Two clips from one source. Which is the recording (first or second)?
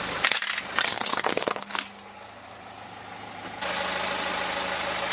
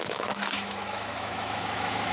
first